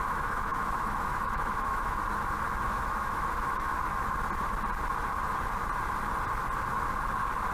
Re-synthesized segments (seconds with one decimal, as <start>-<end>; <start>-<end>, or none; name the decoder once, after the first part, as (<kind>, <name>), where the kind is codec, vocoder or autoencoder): 0.0-2.0 (autoencoder, DAC-VAE); 2.6-3.7

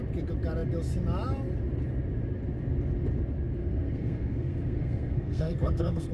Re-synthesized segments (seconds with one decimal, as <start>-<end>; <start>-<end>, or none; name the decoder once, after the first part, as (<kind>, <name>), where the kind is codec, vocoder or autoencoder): 3.6-6.1 (codec, SNAC)

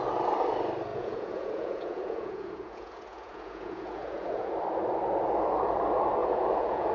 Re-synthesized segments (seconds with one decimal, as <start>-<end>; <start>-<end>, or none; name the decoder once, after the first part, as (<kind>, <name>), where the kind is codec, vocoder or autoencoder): 0.9-4.5 (vocoder, Vocos); 6.2-6.9

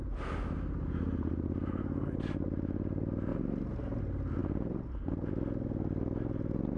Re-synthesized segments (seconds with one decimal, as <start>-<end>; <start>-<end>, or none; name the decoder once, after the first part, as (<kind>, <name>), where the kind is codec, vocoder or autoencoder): 3.3-4.0 (vocoder, BigVGAN v2); 4.4-5.3

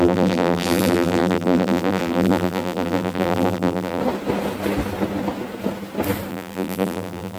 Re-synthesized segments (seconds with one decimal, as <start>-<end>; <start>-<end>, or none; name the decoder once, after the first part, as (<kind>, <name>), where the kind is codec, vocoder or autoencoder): 0.0-4.0 (vocoder, BigVGAN v2); 6.3-7.4

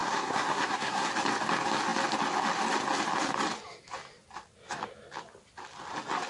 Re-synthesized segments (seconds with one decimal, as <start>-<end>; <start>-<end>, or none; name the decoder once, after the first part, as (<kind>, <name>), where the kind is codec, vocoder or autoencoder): 0.0-1.1 (codec, SNAC)